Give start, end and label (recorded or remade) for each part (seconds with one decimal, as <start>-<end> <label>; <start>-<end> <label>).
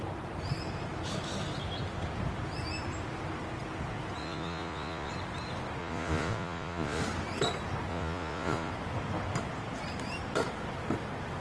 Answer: 0.0-4.2 recorded; 4.2-5.1 remade; 5.1-5.8 recorded; 5.8-7.0 remade; 7.0-7.9 recorded; 7.9-8.7 remade; 8.7-11.4 recorded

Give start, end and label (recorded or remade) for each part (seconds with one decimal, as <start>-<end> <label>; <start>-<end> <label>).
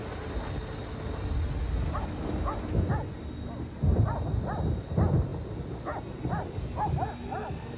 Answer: 0.0-7.8 recorded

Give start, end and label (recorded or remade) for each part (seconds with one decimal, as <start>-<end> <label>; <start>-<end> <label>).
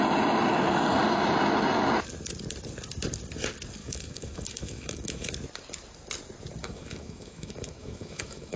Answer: 0.0-3.8 recorded; 3.8-5.3 remade; 5.3-6.6 recorded; 6.6-8.6 remade